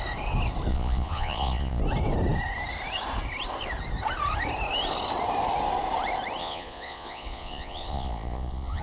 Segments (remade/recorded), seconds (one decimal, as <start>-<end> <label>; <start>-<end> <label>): 0.0-0.7 recorded; 0.7-1.8 remade; 1.8-6.4 recorded; 6.4-8.8 remade